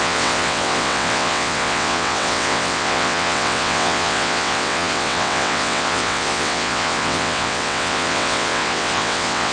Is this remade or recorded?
remade